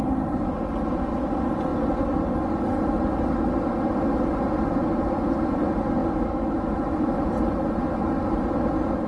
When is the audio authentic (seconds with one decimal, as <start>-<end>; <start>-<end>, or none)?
0.0-6.0; 7.3-9.1